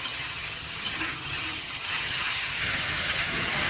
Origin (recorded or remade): remade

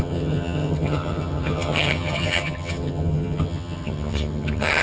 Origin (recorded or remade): remade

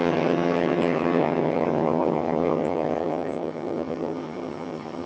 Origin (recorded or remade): remade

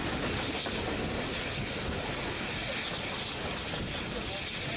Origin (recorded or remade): recorded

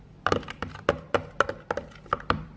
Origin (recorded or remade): recorded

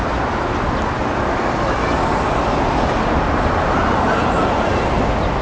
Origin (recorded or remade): recorded